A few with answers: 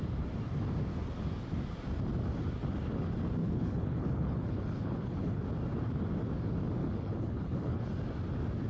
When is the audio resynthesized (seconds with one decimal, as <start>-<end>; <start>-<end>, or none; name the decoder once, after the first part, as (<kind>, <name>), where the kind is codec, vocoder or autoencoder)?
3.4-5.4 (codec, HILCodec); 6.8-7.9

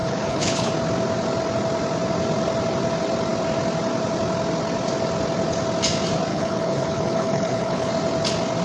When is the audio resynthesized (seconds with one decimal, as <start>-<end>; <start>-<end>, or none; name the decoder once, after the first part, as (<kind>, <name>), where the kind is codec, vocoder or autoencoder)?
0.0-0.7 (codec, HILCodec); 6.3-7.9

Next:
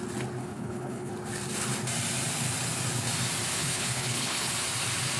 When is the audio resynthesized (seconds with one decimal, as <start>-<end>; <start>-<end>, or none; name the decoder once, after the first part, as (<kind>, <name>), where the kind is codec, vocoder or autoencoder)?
0.4-1.1 (codec, HILCodec); 3.6-4.5

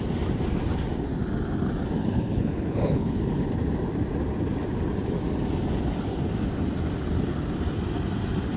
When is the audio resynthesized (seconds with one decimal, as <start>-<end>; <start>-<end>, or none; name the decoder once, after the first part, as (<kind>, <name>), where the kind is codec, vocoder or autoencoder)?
2.0-3.2 (codec, HILCodec)

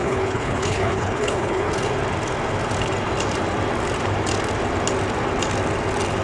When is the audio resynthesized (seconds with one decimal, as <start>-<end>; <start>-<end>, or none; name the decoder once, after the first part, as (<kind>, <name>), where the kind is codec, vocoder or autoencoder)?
0.0-1.7 (codec, HILCodec)

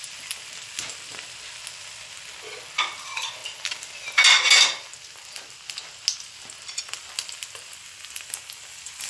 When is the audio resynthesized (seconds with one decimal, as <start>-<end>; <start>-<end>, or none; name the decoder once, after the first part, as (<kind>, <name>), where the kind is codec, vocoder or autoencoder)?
none

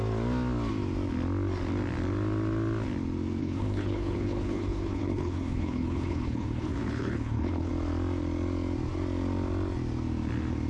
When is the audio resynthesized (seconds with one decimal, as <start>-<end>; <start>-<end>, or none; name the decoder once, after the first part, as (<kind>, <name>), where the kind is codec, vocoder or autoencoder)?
3.4-7.7 (codec, HILCodec)

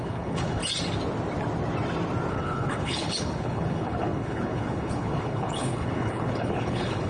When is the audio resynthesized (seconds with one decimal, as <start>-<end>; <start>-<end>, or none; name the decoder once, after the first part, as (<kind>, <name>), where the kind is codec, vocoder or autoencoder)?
0.0-0.6 (codec, HILCodec); 2.3-7.1